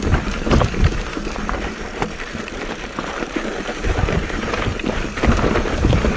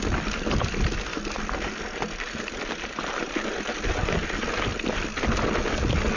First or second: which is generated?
first